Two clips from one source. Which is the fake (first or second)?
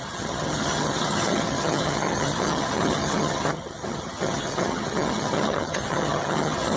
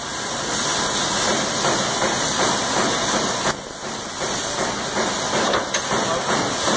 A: first